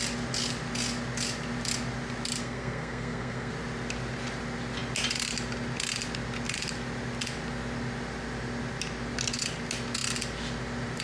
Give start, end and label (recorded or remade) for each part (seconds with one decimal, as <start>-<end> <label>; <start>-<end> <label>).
0.0-2.4 recorded; 2.4-3.5 remade; 3.5-11.0 recorded